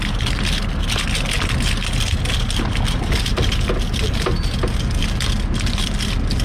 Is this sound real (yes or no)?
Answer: yes